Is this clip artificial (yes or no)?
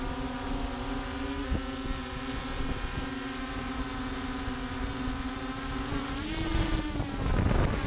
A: no